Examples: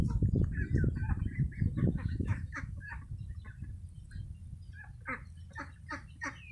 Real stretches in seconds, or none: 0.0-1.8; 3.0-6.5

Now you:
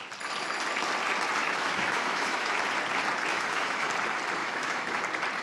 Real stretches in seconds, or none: 0.0-1.4; 2.5-3.3; 3.9-4.4; 5.0-5.4

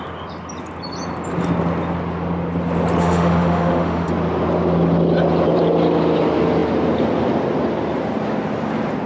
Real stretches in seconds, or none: 0.0-3.0; 4.1-9.1

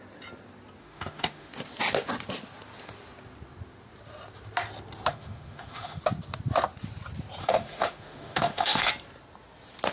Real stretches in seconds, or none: 0.0-0.8; 1.5-5.1; 6.0-7.4; 8.9-9.9

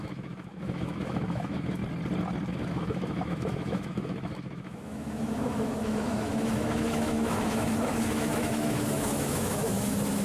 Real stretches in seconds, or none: 1.8-2.5